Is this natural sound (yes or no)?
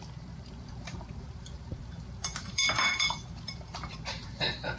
no